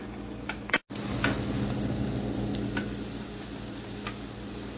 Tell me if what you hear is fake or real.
real